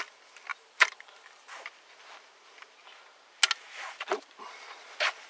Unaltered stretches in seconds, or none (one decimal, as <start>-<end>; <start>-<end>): 0.0-0.5; 1.5-5.3